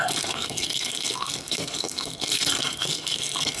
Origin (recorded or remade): remade